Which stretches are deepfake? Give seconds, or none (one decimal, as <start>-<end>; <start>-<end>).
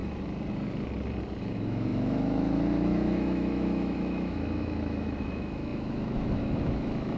1.4-7.2